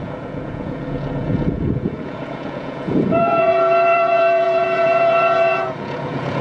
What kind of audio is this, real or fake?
fake